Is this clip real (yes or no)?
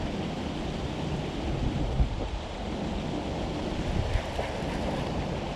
yes